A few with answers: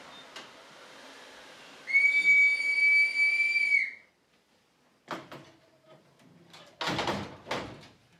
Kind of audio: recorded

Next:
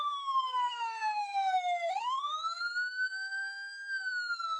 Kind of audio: remade